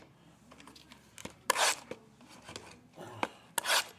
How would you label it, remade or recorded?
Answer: recorded